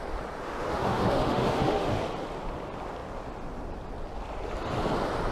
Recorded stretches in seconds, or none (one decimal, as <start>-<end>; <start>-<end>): 0.0-0.4; 2.0-5.3